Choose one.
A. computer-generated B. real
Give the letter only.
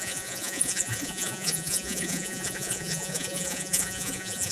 A